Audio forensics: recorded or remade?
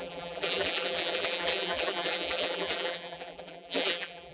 remade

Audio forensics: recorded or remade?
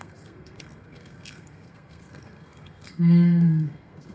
remade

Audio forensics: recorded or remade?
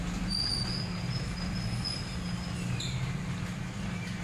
recorded